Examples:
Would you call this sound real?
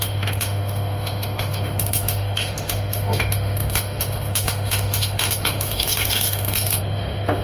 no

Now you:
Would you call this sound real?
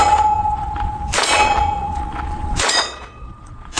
no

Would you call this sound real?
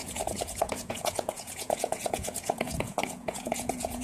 no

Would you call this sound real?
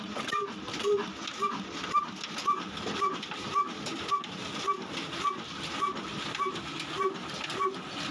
yes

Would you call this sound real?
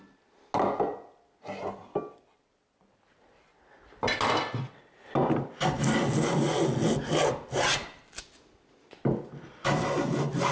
yes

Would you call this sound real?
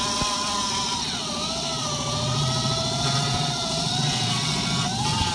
no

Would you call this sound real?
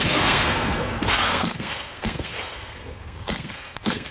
no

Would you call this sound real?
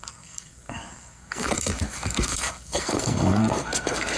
no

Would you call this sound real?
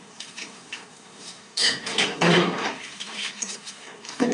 no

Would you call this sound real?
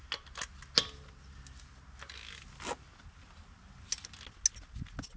yes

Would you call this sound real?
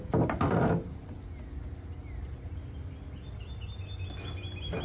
yes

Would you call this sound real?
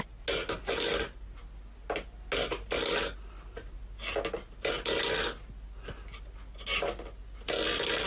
yes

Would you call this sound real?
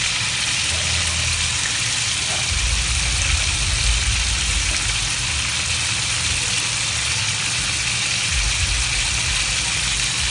yes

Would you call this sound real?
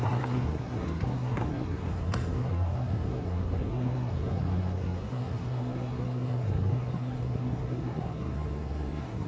no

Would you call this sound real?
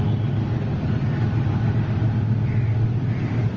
no